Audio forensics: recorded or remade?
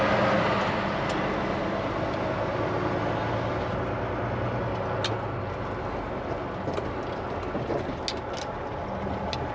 recorded